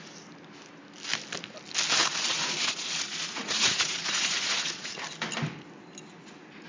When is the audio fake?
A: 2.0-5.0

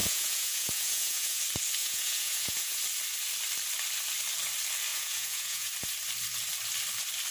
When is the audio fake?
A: 0.0-1.4; 1.8-2.8; 4.9-5.7

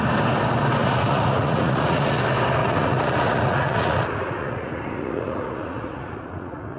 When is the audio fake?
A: 0.8-2.2; 2.6-6.8

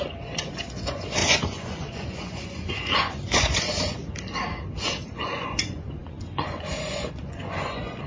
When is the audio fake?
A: 0.0-4.0; 5.0-8.1

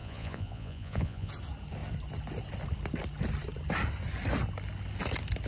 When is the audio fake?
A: 0.0-1.3

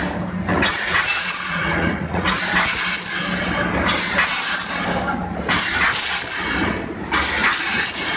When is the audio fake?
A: 0.5-2.4

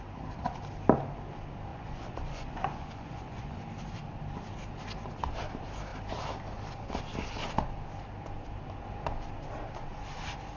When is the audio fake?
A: 1.7-3.6